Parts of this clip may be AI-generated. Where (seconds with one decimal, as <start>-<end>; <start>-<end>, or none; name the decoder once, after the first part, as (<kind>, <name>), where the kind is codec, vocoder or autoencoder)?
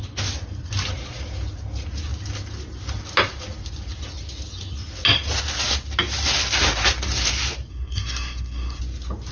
7.7-8.8 (codec, SNAC)